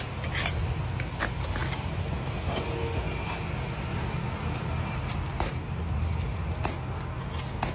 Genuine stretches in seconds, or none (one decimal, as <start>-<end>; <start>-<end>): 0.0-1.6; 2.5-3.9; 5.4-7.7